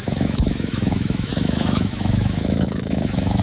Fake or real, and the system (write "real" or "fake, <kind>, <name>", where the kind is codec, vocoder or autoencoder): fake, autoencoder, DAC-VAE